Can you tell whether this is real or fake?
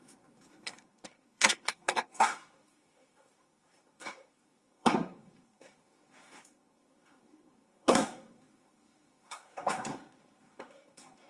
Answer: fake